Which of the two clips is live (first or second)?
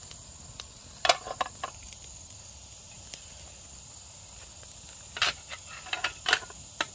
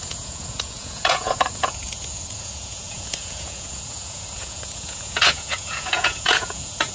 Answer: first